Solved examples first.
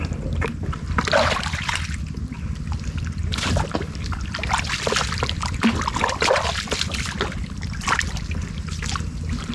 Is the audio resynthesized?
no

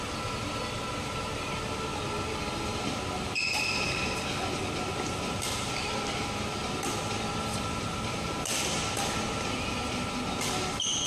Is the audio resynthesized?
no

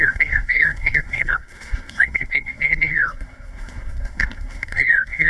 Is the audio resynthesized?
yes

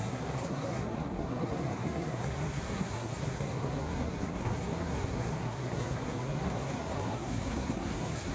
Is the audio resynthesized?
yes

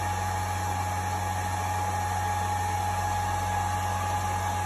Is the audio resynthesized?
no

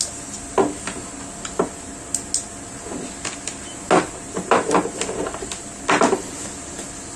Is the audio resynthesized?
no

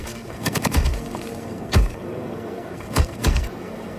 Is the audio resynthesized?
yes